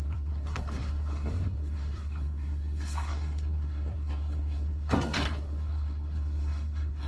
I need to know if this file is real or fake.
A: fake